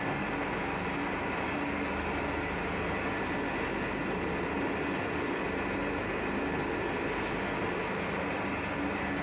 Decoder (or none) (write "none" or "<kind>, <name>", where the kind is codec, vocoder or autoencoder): none